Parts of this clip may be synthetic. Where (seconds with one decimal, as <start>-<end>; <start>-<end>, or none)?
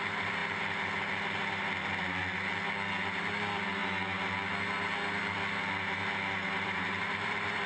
0.0-0.4; 1.4-2.2; 3.2-3.8; 6.5-7.7